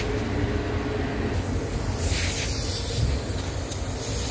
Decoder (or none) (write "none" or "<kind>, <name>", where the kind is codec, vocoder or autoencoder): none